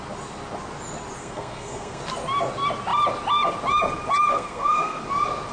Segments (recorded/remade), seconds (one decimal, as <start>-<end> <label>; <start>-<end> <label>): 0.0-1.2 recorded; 1.2-2.0 remade; 2.0-4.3 recorded; 4.3-5.0 remade; 5.0-5.5 recorded